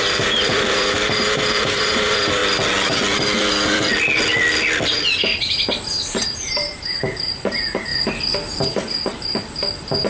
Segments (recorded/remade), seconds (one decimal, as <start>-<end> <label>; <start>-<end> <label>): 0.0-2.4 remade; 2.4-6.2 recorded; 6.2-7.9 remade; 7.9-8.6 recorded; 8.6-10.1 remade